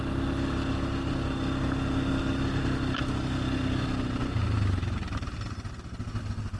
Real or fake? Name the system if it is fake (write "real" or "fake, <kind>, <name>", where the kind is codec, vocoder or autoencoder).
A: real